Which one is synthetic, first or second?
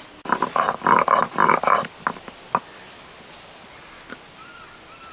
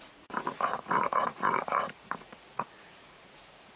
second